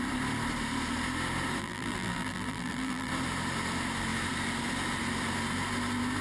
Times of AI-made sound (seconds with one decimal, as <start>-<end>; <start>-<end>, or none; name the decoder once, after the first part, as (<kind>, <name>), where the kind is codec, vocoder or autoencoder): 1.6-3.1 (vocoder, BigVGAN v2)